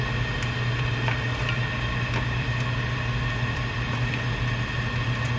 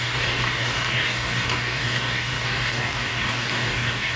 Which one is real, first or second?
first